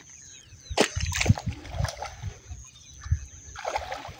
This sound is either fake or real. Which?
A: real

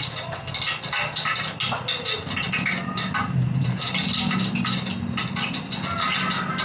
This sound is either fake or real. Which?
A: real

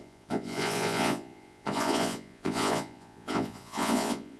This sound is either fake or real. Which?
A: fake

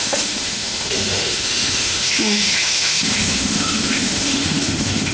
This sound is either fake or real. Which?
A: fake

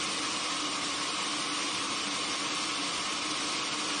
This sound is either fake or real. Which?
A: real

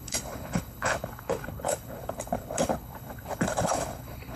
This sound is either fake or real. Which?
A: fake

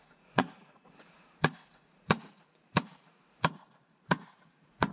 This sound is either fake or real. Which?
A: fake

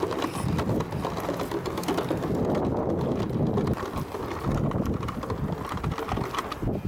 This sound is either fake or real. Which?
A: real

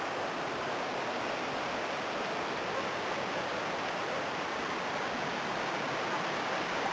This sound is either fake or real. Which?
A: real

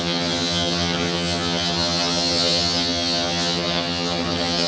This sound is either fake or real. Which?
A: fake